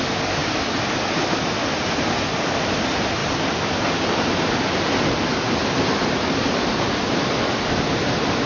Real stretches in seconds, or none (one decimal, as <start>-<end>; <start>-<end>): 0.0-8.5